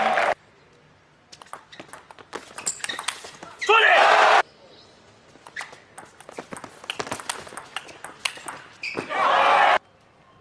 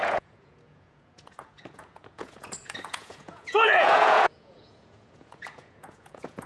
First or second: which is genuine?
first